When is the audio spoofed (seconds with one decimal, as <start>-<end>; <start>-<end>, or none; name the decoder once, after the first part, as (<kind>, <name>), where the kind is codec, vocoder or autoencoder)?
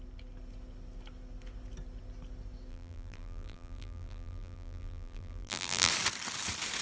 2.7-5.9 (vocoder, BigVGAN v2)